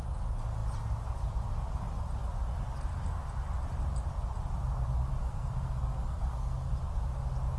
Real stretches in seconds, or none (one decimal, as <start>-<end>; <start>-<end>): 0.0-5.2; 6.7-7.6